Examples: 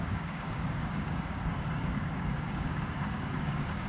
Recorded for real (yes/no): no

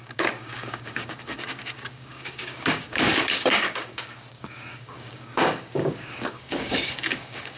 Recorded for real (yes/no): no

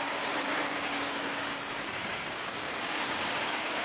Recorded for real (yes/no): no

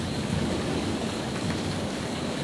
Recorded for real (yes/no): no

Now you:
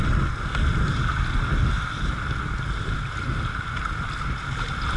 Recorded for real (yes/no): yes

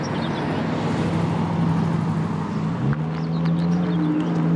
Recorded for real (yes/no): yes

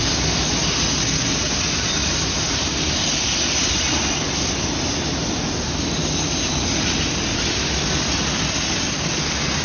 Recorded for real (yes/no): yes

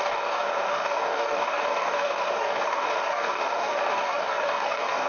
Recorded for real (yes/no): no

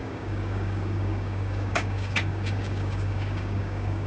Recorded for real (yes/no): no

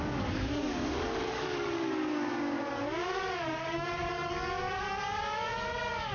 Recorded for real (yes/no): no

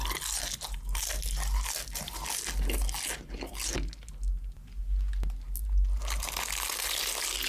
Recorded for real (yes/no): yes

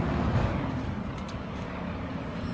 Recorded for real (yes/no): no